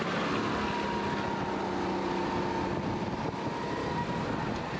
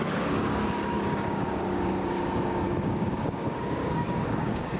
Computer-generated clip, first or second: second